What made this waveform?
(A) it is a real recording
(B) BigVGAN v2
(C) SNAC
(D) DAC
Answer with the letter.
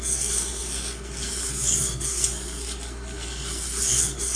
C